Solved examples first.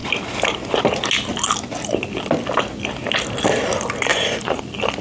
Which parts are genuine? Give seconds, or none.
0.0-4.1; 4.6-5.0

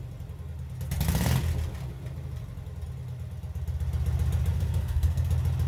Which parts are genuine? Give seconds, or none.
0.0-4.5; 5.3-5.7

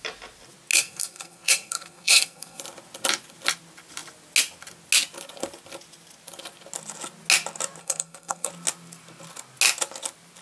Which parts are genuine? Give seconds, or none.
0.0-0.7; 2.6-7.8; 8.5-10.4

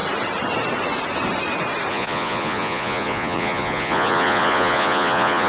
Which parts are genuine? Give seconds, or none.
0.0-1.9

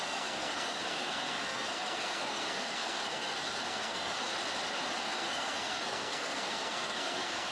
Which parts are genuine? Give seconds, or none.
4.3-5.0